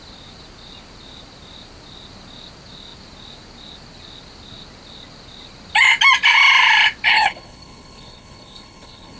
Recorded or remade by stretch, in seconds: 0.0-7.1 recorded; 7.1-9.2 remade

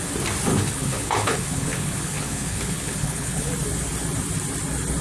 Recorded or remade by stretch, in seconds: 0.0-0.5 recorded; 0.5-3.5 remade; 3.5-5.0 recorded